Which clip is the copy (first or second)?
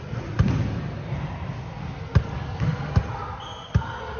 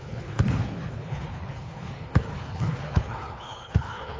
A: second